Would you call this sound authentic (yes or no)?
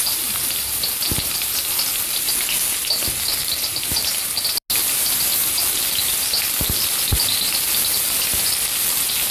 yes